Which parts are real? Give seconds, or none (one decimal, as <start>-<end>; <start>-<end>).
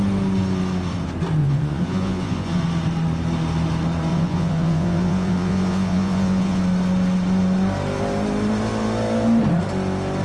0.0-1.4; 2.6-4.1; 6.6-10.2